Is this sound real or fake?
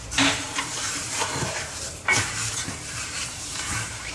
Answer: fake